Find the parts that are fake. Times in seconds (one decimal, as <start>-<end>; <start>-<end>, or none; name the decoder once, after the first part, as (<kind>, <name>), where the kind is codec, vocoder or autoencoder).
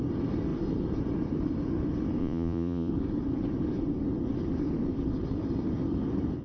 2.2-2.9 (vocoder, Vocos)